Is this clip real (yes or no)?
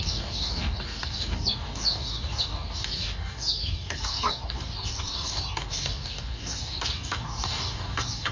no